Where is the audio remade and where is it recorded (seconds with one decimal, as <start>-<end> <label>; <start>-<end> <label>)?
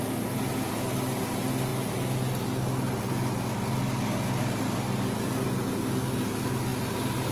0.0-7.3 recorded